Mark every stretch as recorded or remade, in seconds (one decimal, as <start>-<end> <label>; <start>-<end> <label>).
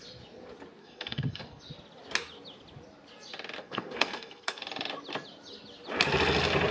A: 0.0-0.8 recorded; 0.8-1.6 remade; 1.6-3.6 recorded; 3.6-4.6 remade; 4.6-6.7 recorded